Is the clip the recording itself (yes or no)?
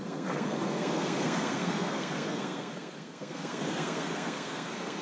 no